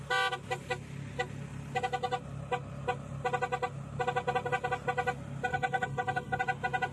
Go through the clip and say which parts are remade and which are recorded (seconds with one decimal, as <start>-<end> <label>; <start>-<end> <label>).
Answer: 0.0-5.5 recorded; 5.5-6.4 remade; 6.4-6.9 recorded